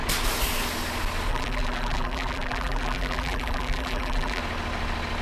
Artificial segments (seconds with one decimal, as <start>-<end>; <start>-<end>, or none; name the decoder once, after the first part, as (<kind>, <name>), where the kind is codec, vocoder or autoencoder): 1.3-4.4 (vocoder, BigVGAN v2)